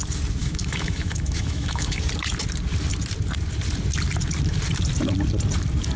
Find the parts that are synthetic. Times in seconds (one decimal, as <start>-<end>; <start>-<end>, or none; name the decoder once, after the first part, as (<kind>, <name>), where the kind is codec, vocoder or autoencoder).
0.4-2.0 (autoencoder, DAC-VAE)